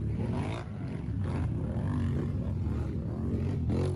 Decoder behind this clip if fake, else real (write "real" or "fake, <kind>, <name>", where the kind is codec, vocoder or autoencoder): real